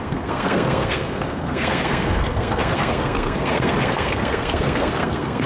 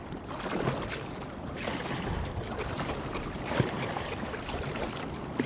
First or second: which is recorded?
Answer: second